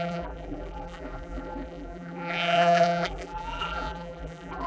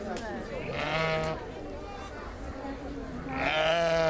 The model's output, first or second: first